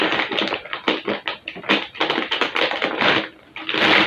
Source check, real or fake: real